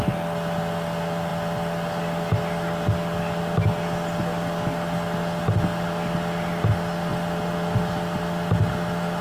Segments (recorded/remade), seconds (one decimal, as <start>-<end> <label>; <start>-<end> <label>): 0.0-9.2 recorded